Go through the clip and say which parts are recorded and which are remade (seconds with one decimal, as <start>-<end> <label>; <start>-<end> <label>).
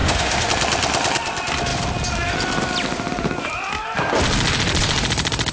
0.0-0.5 remade; 0.5-5.5 recorded